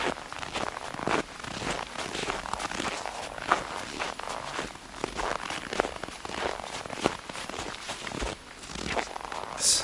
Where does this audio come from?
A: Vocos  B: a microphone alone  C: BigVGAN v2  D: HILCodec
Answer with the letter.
B